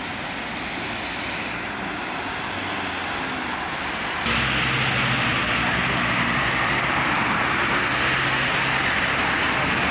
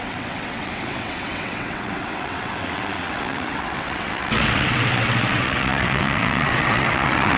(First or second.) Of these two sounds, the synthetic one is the second